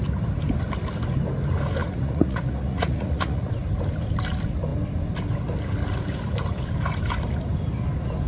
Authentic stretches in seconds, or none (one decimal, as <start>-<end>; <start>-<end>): 0.0-1.8; 3.5-8.3